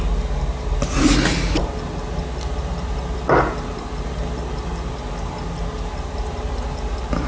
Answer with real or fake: real